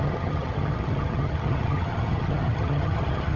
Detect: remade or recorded remade